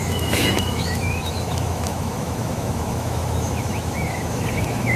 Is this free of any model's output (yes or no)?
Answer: no